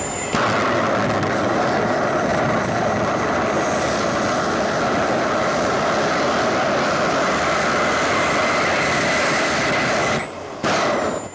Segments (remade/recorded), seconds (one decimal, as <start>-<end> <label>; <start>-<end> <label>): 0.0-11.3 recorded